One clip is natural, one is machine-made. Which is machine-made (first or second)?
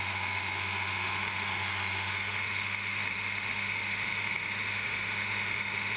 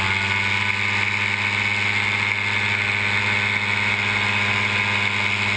first